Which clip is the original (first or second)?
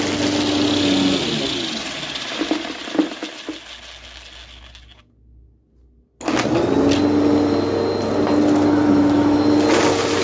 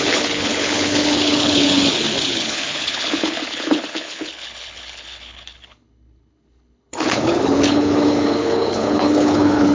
first